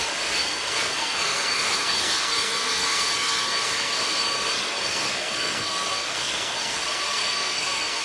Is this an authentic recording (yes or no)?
no